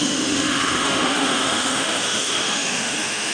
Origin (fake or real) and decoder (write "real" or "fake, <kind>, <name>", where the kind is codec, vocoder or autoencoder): fake, autoencoder, DAC-VAE